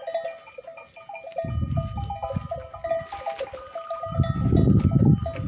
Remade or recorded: recorded